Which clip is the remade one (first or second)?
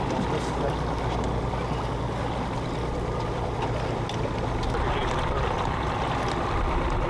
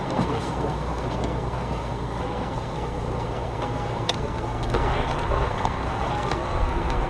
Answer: second